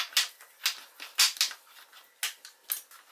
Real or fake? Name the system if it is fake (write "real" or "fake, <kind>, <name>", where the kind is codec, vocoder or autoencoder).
real